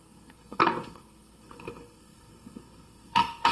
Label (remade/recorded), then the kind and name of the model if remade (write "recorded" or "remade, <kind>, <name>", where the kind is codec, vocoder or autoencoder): remade, codec, SNAC